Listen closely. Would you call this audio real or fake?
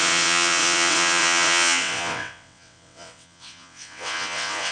fake